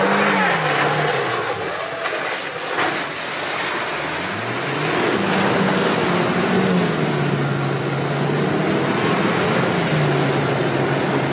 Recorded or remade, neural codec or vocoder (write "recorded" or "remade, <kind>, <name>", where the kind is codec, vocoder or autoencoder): recorded